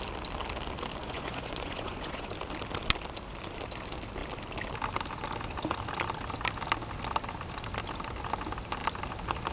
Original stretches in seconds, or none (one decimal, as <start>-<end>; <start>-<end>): 0.0-1.0; 2.3-9.5